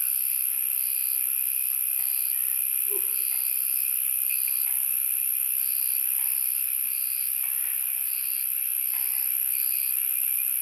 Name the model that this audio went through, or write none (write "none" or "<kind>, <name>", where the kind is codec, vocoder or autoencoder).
none